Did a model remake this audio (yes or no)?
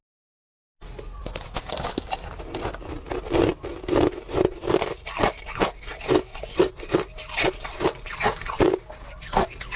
no